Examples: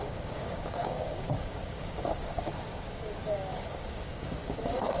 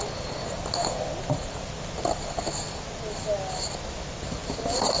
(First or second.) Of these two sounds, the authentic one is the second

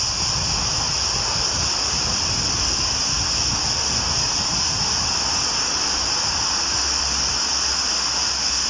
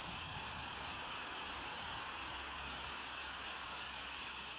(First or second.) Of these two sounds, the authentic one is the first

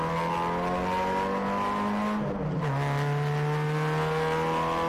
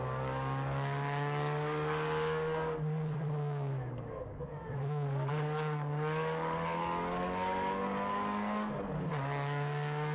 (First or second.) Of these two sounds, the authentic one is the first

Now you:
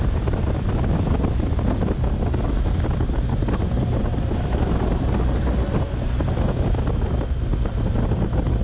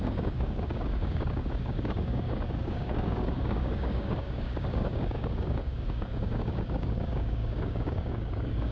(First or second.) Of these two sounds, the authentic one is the first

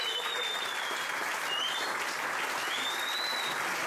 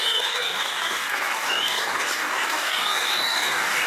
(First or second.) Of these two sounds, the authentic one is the first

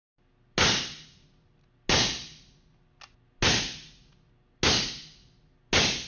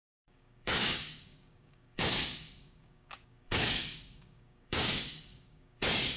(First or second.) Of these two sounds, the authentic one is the first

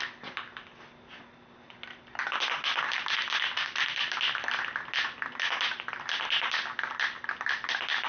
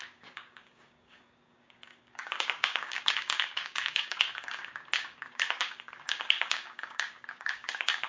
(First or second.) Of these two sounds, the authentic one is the first